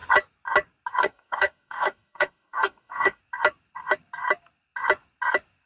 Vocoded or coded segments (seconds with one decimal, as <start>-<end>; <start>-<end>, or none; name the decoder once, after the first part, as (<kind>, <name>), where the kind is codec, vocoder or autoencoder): 1.0-3.2 (codec, DAC)